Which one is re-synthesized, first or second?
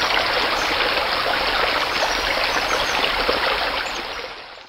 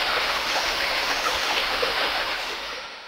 second